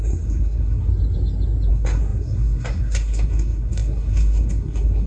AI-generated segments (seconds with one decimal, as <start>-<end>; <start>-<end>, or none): 0.0-0.9; 1.7-5.1